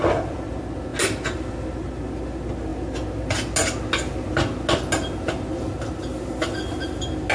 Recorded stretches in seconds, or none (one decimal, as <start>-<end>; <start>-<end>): 0.0-7.3